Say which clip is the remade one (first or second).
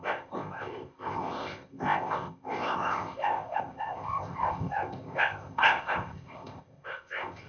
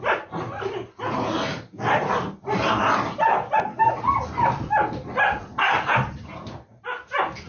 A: first